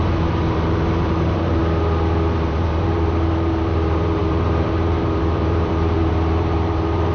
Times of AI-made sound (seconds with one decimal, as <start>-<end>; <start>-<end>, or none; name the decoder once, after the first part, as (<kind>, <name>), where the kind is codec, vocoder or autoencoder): 0.0-1.6 (vocoder, BigVGAN v2); 2.3-7.1